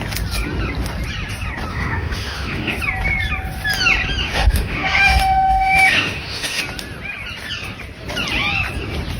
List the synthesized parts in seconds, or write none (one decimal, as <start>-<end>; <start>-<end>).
1.7-2.8; 4.2-6.6